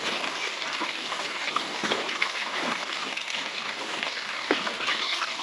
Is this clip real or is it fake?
fake